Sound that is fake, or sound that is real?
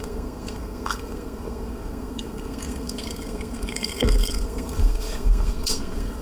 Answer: fake